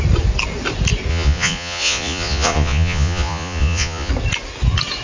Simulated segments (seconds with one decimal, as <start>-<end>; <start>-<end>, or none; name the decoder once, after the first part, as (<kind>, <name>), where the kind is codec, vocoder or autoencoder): 1.1-4.1 (vocoder, Vocos)